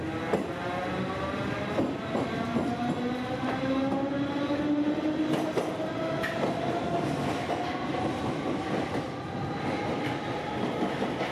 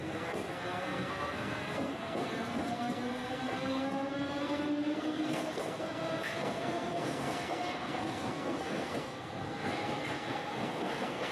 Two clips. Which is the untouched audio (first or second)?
first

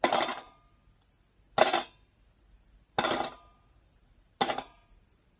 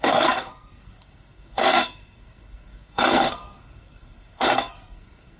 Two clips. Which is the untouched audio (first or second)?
first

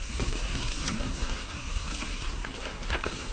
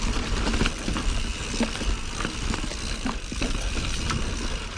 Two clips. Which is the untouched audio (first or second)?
second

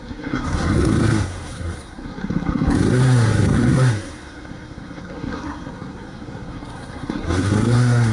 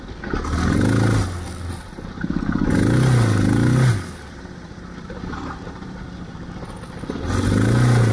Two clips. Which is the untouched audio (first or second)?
second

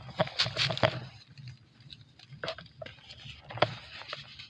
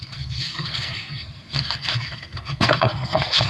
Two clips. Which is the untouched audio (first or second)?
first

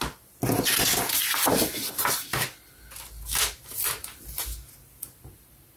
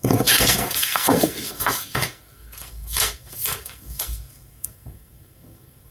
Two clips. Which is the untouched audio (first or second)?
first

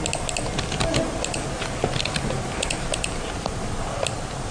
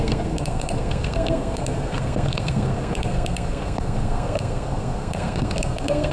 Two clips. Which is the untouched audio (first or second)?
first